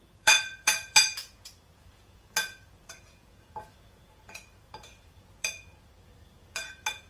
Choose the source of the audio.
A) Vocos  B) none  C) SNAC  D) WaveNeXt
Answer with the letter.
A